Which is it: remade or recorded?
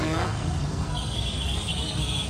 remade